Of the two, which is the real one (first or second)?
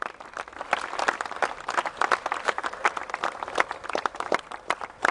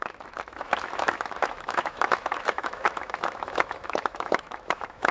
first